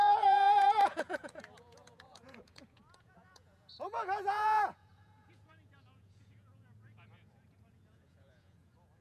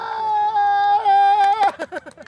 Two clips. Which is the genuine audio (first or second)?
second